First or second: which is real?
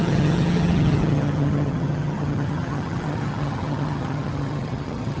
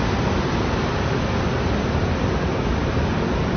second